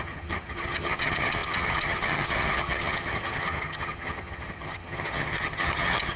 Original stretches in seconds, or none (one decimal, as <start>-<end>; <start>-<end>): none